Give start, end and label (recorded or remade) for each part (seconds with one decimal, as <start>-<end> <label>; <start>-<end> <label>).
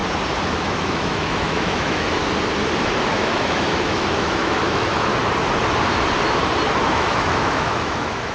0.0-0.5 recorded; 0.5-2.2 remade; 2.2-3.1 recorded; 3.1-5.1 remade; 5.1-6.9 recorded; 6.9-8.3 remade